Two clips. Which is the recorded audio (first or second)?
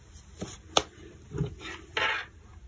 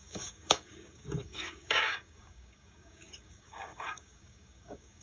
first